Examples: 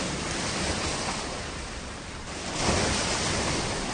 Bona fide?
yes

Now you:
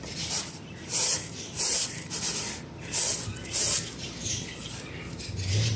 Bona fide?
yes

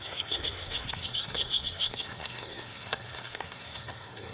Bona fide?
no